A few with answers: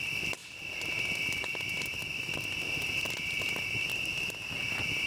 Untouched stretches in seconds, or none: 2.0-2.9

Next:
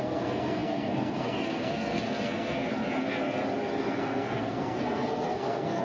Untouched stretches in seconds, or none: 2.7-3.8

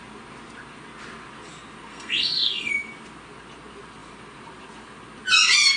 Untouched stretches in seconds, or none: 0.0-1.9; 2.7-5.8

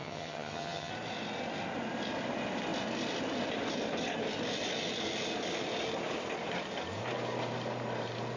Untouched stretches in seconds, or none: 0.9-8.4